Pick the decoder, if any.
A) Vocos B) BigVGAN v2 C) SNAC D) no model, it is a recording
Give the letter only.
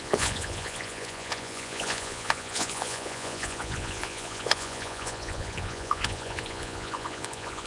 A